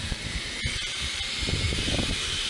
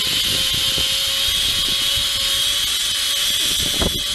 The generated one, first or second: first